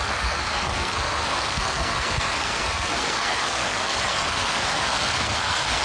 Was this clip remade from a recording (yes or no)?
yes